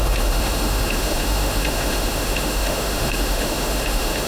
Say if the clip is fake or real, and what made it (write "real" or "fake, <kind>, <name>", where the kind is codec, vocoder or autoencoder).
fake, autoencoder, DAC-VAE